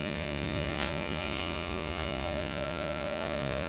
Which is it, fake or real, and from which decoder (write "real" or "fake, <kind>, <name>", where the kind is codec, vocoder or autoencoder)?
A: fake, vocoder, Vocos